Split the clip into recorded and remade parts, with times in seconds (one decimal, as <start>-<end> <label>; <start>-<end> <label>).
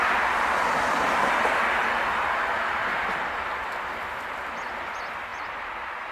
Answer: 0.0-6.1 recorded